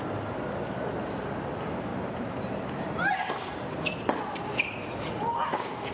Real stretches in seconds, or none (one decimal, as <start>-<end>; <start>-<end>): 0.0-1.9; 4.4-5.9